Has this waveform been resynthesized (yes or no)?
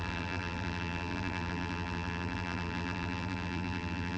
yes